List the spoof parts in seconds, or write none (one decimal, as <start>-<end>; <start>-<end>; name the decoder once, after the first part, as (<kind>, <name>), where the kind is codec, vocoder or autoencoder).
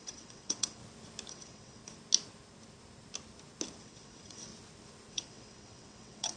0.0-0.8 (vocoder, WaveNeXt); 1.3-1.8; 3.8-4.5; 5.1-6.4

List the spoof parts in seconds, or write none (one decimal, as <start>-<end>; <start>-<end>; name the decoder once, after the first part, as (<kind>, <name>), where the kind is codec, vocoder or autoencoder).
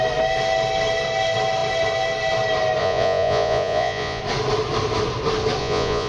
2.8-4.2 (vocoder, Vocos); 5.6-6.1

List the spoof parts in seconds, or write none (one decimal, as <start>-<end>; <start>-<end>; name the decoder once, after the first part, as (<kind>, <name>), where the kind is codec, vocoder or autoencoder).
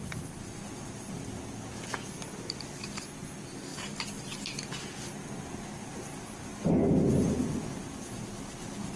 none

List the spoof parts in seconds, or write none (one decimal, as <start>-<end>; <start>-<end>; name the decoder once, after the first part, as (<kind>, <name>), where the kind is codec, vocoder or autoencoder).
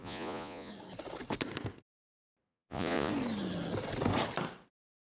0.0-0.7 (vocoder, Vocos); 2.5-3.1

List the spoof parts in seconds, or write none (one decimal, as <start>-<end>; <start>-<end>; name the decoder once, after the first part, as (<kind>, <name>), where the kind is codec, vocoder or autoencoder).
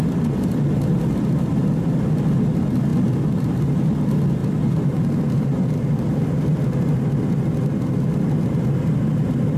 4.4-5.7 (vocoder, BigVGAN v2)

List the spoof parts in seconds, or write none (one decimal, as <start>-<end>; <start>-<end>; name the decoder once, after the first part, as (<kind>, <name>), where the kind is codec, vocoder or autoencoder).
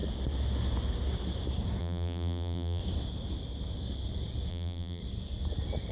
1.8-2.8 (vocoder, BigVGAN v2); 4.5-5.0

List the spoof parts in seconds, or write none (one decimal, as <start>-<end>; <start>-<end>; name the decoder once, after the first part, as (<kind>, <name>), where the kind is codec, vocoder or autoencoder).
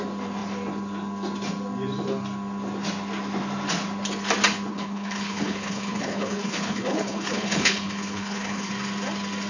4.7-8.7 (codec, HILCodec)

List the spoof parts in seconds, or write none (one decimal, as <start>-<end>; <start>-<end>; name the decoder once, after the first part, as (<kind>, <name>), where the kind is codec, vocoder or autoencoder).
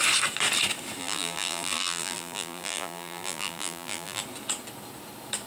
1.0-4.2 (vocoder, BigVGAN v2)